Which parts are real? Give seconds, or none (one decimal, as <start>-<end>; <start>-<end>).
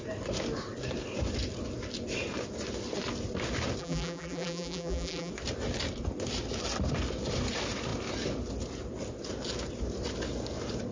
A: 0.0-3.8; 5.3-10.9